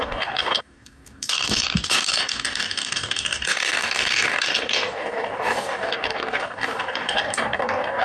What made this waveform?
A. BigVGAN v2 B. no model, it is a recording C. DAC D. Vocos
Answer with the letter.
C